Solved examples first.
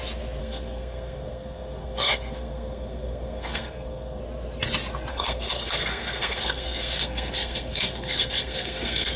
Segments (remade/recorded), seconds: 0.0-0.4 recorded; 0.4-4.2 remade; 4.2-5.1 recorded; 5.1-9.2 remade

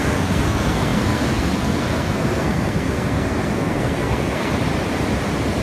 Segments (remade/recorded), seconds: 0.0-4.5 remade; 4.5-5.6 recorded